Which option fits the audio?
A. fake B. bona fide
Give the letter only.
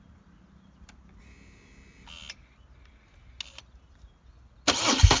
B